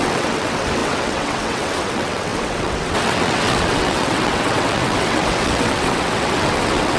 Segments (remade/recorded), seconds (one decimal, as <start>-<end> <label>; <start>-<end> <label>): 0.0-7.0 remade